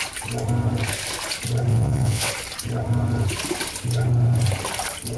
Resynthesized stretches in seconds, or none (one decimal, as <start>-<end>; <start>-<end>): 1.7-2.3